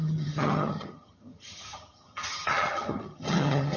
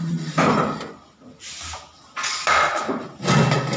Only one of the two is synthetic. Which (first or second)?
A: first